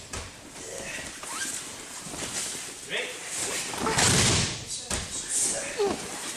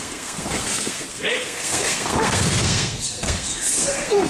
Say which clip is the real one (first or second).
first